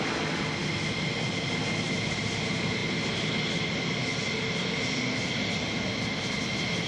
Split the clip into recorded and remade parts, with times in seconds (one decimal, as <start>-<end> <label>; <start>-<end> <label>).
0.0-6.9 recorded